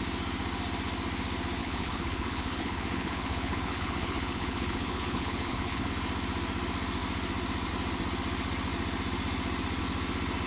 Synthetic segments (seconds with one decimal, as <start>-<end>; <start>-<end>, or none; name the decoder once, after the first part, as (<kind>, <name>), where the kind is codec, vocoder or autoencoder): 1.6-5.9 (codec, HILCodec)